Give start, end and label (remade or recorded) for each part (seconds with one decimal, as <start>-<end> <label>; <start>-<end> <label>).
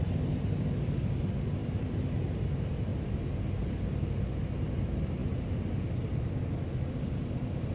0.0-1.6 recorded; 1.6-2.4 remade; 2.4-7.7 recorded